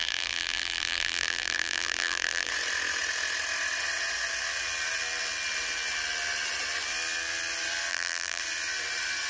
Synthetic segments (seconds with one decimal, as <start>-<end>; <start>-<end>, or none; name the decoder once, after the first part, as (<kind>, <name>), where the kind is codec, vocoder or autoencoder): 0.0-2.5 (vocoder, BigVGAN v2); 7.9-8.4